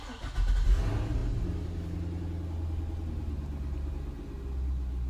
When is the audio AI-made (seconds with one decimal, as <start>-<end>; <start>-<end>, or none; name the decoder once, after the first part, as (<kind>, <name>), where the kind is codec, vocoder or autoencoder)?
none